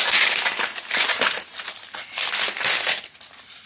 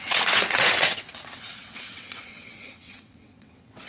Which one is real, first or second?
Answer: first